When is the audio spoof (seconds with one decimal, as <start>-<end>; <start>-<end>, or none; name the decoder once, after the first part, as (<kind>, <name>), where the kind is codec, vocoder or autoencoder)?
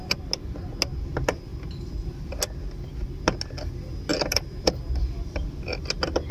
4.1-4.7 (vocoder, BigVGAN v2)